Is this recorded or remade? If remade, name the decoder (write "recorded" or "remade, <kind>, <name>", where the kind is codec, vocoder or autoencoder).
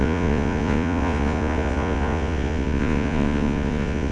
remade, vocoder, Vocos